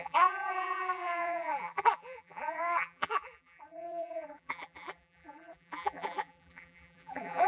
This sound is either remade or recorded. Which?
remade